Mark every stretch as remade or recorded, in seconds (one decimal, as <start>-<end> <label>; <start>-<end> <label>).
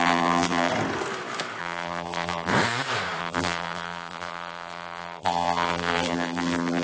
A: 0.0-0.7 remade; 0.7-1.6 recorded; 1.6-2.5 remade; 2.5-3.2 recorded; 3.2-6.8 remade